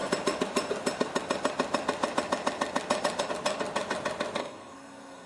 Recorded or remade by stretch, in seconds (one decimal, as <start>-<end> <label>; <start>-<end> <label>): 0.0-4.4 recorded; 4.4-5.3 remade